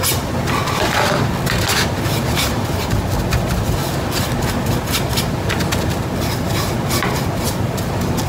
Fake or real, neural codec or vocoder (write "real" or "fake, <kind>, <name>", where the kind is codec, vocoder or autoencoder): real